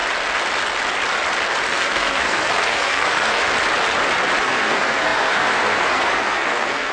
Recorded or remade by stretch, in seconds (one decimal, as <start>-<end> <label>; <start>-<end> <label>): 0.0-1.7 recorded; 1.7-3.4 remade; 3.4-4.4 recorded; 4.4-6.9 remade